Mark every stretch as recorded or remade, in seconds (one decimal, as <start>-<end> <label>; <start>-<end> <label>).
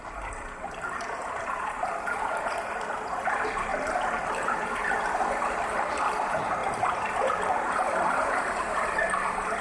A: 0.0-3.7 remade; 3.7-4.3 recorded; 4.3-9.6 remade